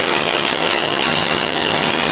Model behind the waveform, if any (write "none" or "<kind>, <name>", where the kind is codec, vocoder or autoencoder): vocoder, HiFi-GAN